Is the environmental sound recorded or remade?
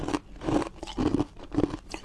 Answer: recorded